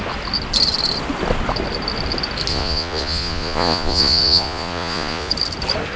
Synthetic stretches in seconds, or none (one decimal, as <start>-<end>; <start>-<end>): 2.5-5.3